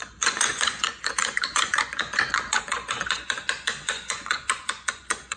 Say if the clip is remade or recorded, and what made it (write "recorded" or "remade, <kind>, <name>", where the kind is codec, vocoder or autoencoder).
remade, vocoder, Vocos